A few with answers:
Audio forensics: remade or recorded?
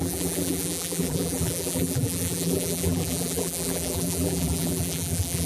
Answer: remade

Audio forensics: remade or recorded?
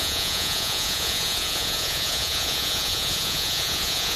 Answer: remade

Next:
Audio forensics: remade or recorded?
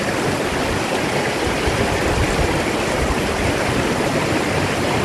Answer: recorded